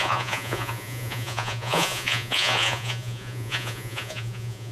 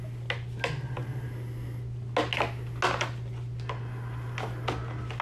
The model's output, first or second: first